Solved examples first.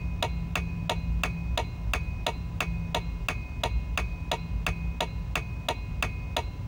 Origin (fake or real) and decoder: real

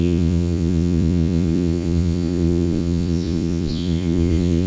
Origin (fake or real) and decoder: fake, vocoder, Vocos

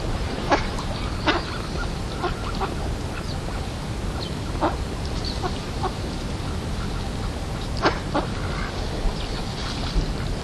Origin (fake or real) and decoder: real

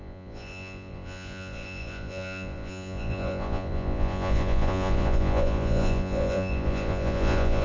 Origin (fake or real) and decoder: fake, vocoder, Vocos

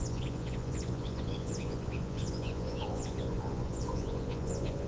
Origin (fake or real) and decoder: fake, vocoder, Vocos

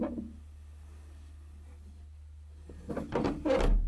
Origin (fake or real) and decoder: real